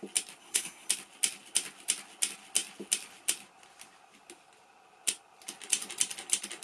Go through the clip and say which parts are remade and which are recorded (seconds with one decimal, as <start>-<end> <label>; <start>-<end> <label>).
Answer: 0.0-0.4 recorded; 0.4-0.9 remade; 0.9-6.6 recorded